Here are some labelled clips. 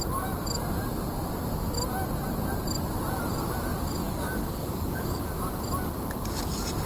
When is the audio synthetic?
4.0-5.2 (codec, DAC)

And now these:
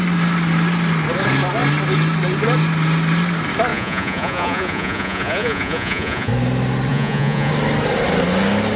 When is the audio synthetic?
3.7-6.3 (vocoder, Vocos); 6.9-7.5

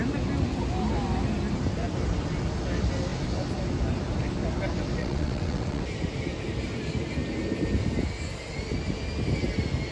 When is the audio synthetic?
5.0-5.8 (vocoder, WaveNeXt)

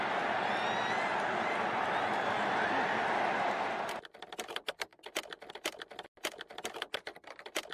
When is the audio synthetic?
none

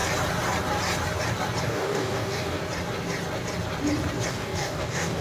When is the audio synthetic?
1.6-2.6 (codec, DAC); 4.3-5.2